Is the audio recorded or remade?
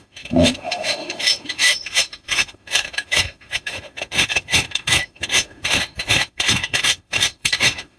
remade